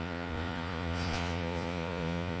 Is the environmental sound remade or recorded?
remade